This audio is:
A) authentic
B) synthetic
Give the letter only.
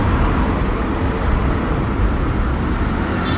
A